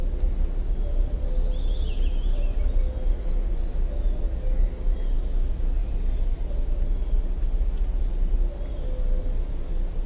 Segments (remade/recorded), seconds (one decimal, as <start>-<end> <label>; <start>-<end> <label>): 0.0-10.1 recorded